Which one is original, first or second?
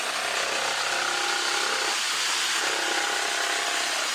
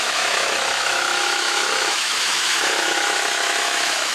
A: first